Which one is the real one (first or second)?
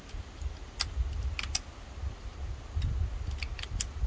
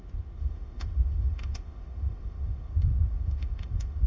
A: first